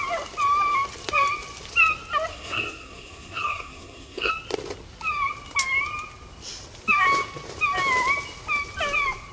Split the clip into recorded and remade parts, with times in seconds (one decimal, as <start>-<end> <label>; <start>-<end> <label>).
0.0-2.3 recorded; 2.3-4.3 remade; 4.3-9.3 recorded